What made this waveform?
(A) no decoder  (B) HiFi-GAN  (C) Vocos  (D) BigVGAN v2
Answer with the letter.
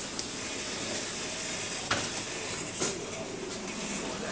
A